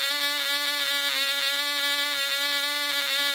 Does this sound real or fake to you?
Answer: real